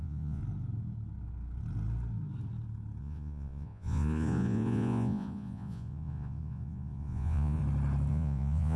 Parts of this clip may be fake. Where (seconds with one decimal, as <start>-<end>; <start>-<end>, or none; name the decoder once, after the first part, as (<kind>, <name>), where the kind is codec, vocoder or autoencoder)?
0.0-0.4 (vocoder, Vocos); 3.0-7.6; 8.1-8.8